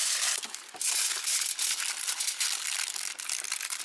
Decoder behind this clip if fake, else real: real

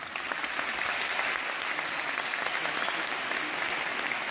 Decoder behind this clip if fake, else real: real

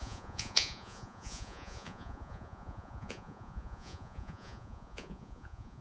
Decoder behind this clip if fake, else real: fake, vocoder, Vocos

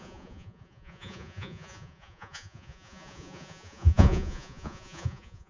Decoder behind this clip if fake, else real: fake, vocoder, Vocos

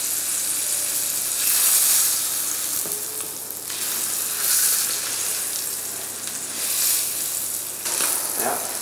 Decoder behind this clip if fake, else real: real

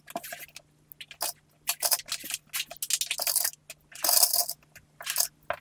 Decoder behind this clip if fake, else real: real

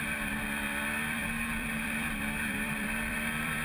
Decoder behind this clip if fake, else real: fake, vocoder, BigVGAN v2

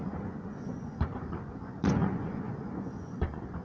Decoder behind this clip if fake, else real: fake, vocoder, Vocos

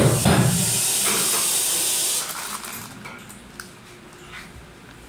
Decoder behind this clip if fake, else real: real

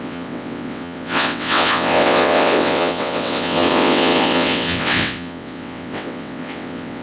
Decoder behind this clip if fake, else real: fake, vocoder, WaveNeXt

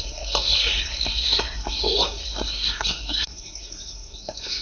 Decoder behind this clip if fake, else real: fake, codec, SNAC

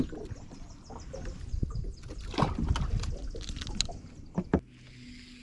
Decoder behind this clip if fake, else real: real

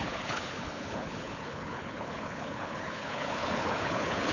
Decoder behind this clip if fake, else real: fake, codec, HILCodec